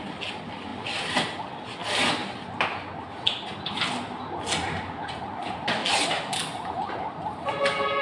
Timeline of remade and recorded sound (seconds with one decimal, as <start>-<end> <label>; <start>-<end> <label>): 0.0-8.0 recorded